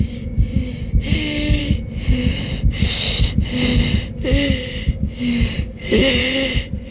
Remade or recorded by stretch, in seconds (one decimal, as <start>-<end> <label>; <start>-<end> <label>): 0.0-1.6 remade; 1.6-4.9 recorded; 4.9-6.2 remade; 6.2-6.9 recorded